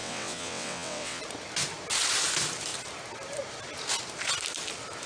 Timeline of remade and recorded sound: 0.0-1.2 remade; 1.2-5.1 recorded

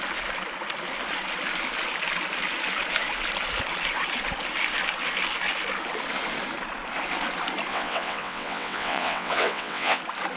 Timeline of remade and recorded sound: 0.0-7.7 recorded; 7.7-10.0 remade; 10.0-10.4 recorded

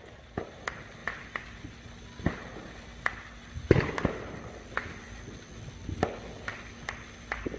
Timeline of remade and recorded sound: 0.0-7.6 recorded

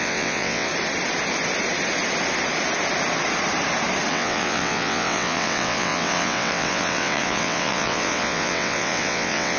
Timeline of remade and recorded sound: 0.0-0.7 remade; 0.7-4.1 recorded; 4.1-9.6 remade